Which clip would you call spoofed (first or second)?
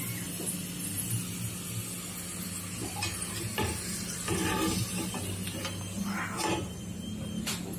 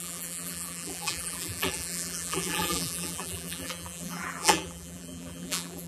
second